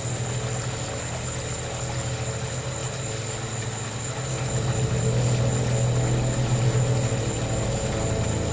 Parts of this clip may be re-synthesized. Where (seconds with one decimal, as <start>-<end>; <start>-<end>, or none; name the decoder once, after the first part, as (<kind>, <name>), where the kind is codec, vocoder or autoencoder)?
none